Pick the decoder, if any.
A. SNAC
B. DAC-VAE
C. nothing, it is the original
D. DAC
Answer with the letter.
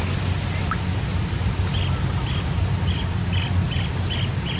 C